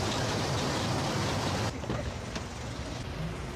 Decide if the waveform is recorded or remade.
recorded